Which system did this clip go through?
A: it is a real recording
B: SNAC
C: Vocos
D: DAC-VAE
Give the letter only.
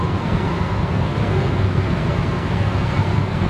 B